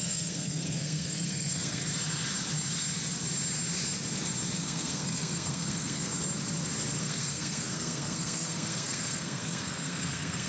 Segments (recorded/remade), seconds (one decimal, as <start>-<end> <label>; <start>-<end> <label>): 0.0-1.8 remade; 1.8-4.6 recorded; 4.6-6.1 remade; 6.1-7.0 recorded; 7.0-10.5 remade

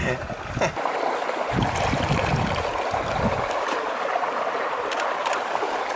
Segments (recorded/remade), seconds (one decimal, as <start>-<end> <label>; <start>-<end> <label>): 0.0-6.0 recorded

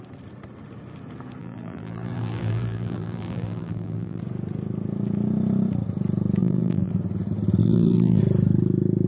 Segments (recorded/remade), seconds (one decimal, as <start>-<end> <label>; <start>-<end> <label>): 0.0-1.4 recorded; 1.4-4.2 remade; 4.2-6.4 recorded; 6.4-6.9 remade; 6.9-7.6 recorded; 7.6-8.2 remade; 8.2-9.1 recorded